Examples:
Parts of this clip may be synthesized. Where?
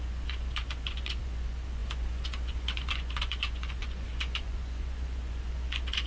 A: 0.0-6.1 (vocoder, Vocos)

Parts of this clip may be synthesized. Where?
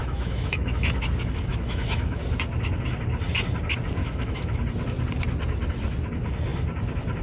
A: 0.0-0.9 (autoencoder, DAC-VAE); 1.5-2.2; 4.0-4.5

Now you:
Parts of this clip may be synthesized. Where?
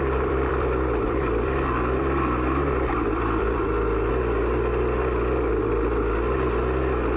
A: 0.0-4.1 (vocoder, BigVGAN v2)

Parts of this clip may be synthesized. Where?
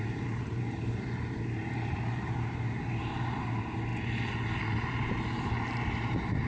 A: 0.0-3.9 (vocoder, BigVGAN v2); 4.6-6.5